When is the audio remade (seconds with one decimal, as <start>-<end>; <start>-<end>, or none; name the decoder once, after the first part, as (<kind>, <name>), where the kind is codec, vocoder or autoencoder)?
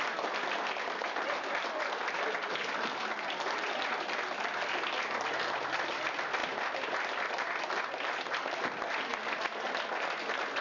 none